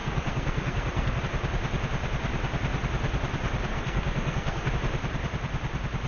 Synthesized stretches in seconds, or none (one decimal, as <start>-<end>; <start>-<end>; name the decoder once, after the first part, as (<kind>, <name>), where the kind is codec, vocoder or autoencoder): 0.0-1.2 (codec, SNAC); 3.7-4.7